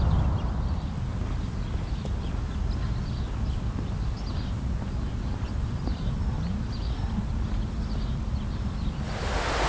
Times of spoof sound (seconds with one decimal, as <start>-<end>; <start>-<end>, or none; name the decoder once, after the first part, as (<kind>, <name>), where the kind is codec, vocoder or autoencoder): none